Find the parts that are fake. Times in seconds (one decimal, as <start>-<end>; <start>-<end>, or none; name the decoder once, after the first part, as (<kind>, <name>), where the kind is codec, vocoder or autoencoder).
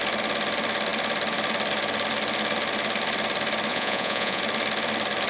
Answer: 3.7-4.4 (vocoder, Vocos)